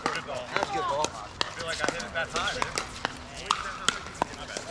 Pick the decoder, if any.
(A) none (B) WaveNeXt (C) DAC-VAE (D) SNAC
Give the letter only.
A